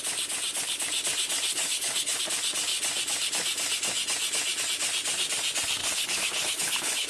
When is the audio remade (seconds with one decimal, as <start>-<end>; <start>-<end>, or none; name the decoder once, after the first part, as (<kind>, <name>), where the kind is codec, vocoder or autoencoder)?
1.5-2.2 (codec, HILCodec); 5.8-7.1